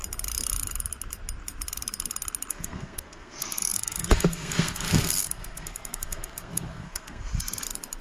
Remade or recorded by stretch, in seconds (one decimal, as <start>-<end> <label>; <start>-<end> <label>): 0.0-2.5 recorded; 2.5-7.3 remade; 7.3-8.0 recorded